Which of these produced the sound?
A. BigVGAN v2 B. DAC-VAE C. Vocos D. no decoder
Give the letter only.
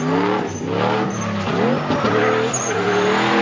D